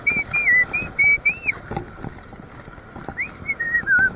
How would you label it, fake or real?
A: real